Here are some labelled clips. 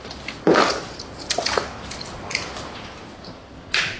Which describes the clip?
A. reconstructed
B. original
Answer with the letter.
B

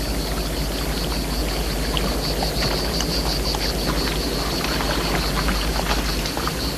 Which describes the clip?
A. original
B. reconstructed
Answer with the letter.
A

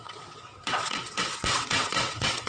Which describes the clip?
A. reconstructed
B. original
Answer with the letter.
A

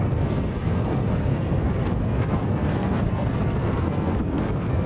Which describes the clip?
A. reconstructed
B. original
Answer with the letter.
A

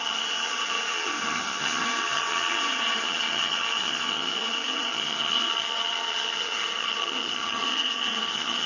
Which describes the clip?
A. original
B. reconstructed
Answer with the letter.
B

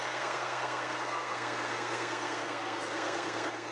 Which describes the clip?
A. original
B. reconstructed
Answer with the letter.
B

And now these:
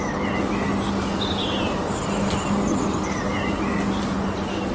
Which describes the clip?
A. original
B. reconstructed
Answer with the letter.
A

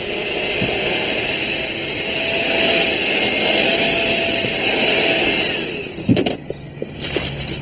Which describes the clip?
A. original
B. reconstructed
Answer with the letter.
A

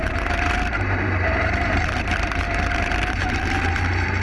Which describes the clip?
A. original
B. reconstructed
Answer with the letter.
B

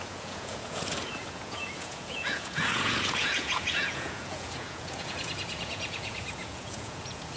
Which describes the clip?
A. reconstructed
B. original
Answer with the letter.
A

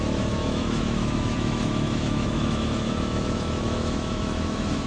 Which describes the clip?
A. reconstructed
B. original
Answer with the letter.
A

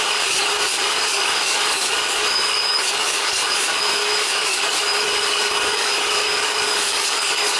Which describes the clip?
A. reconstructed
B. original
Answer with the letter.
A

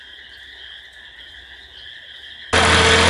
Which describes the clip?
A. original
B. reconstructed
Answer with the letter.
A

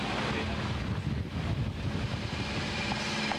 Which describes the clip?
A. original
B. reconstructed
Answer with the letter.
A